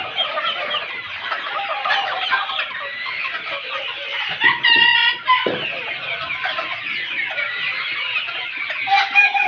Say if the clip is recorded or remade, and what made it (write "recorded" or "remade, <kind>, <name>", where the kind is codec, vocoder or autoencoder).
remade, vocoder, BigVGAN v2